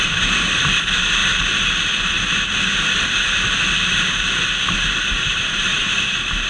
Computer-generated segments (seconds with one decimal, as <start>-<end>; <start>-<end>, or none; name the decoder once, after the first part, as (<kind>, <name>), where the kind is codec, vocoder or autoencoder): 0.0-1.2 (vocoder, BigVGAN v2); 5.1-5.7